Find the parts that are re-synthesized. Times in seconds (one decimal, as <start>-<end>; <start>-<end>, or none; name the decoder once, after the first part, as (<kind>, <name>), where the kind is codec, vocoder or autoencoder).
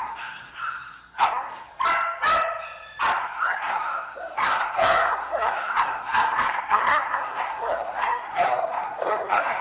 0.0-1.7 (codec, SNAC); 3.2-9.6